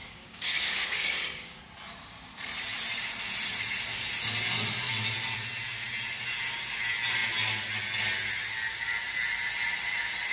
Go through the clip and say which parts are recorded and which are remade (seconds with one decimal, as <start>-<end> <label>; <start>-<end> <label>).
0.0-1.6 remade; 1.6-10.3 recorded